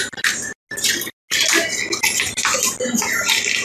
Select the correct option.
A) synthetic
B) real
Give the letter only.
B